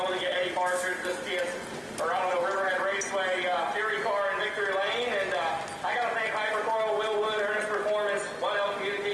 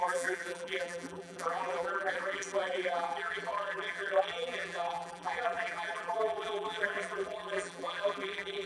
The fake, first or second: second